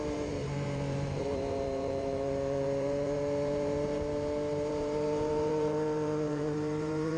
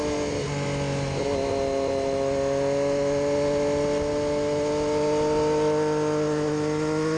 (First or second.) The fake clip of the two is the first